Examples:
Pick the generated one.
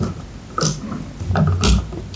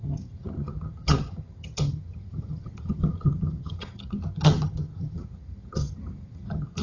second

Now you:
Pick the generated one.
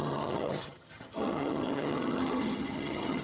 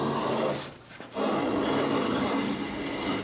first